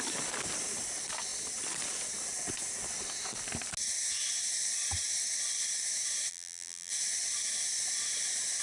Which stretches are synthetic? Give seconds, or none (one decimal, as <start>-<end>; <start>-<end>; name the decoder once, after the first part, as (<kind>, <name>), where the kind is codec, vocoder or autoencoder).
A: 6.3-6.9 (vocoder, BigVGAN v2)